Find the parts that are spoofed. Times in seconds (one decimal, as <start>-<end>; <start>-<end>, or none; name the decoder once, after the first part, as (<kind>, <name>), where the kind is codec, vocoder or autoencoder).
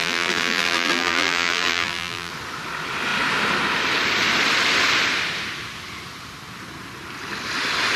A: 0.0-2.3 (vocoder, BigVGAN v2)